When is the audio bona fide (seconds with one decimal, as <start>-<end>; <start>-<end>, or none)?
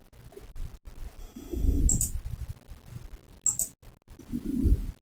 0.0-1.2; 1.8-5.0